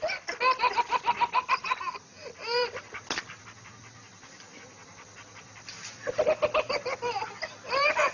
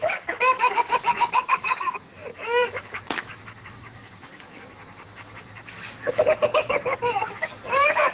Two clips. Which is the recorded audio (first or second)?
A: first